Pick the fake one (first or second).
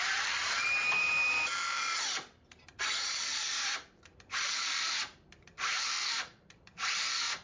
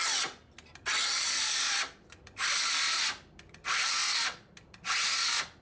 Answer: first